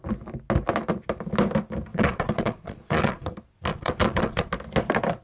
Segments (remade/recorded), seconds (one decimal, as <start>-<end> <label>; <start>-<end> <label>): 0.0-1.9 recorded; 1.9-3.3 remade; 3.3-3.7 recorded; 3.7-4.5 remade; 4.5-5.2 recorded